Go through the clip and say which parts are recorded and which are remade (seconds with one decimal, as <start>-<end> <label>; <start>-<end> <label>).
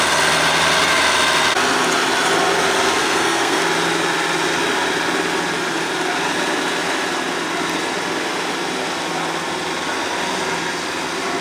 0.0-3.0 recorded; 3.0-3.6 remade; 3.6-11.4 recorded